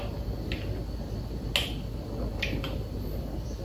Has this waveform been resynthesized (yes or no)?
no